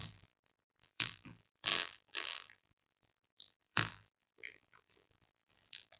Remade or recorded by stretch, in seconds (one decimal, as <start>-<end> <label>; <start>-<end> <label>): 0.0-6.0 remade